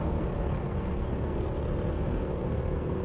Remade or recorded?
remade